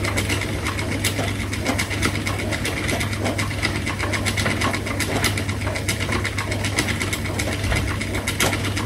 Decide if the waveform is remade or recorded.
recorded